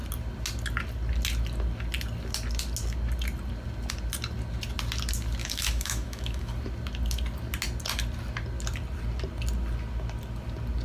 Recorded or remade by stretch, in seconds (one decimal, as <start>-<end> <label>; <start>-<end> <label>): 0.0-5.4 recorded; 5.4-6.5 remade; 6.5-10.8 recorded